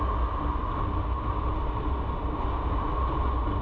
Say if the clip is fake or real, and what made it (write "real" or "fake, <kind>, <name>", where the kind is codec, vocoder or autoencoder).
real